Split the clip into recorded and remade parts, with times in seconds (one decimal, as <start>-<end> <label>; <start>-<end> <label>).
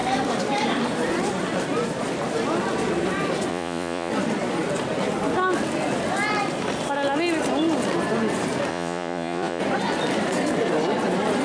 0.0-3.5 recorded; 3.5-4.1 remade; 4.1-8.7 recorded; 8.7-9.6 remade; 9.6-11.4 recorded